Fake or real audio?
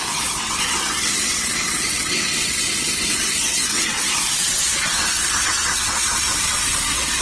fake